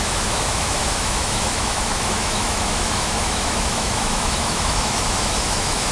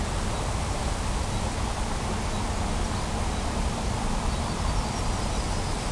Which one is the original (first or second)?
second